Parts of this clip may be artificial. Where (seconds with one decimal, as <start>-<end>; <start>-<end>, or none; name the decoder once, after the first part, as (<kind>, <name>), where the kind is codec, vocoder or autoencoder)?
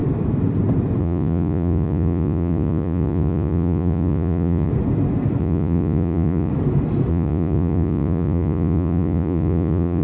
1.0-4.7 (vocoder, Vocos); 5.4-6.5; 7.1-10.0